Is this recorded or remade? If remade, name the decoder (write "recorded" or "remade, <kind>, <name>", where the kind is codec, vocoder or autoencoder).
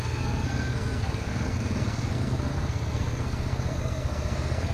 remade, codec, SNAC